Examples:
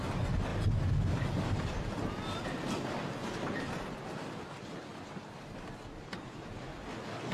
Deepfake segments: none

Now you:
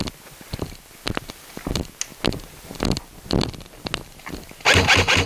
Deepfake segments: none

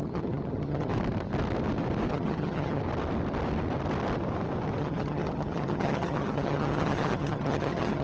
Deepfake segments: 0.0-0.9 (vocoder, HiFi-GAN); 2.1-2.8; 4.8-8.0

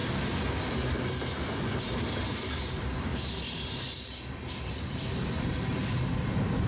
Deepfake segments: 0.0-2.5 (vocoder, BigVGAN v2); 3.1-4.5

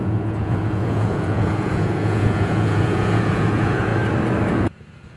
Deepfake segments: 0.0-3.9 (vocoder, Vocos); 4.5-5.2